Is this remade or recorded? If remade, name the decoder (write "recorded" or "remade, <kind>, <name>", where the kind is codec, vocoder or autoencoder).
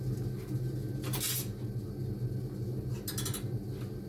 recorded